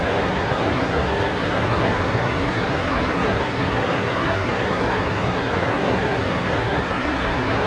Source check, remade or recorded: remade